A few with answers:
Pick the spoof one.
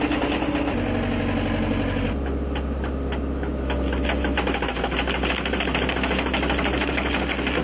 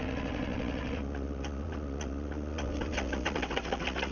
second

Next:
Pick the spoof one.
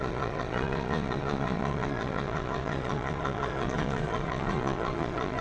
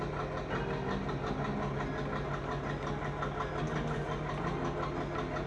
first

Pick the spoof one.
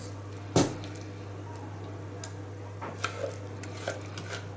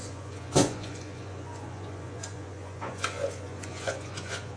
second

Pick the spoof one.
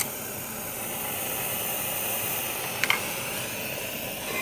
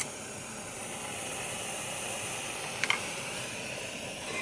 second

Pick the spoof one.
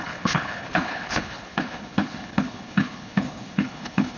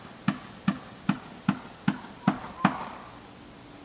first